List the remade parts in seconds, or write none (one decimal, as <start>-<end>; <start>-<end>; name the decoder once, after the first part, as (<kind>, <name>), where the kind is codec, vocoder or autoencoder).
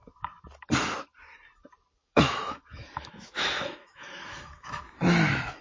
2.0-5.6 (autoencoder, DAC-VAE)